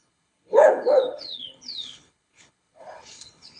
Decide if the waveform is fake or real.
fake